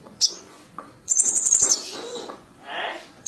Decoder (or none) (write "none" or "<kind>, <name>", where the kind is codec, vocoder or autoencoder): vocoder, Vocos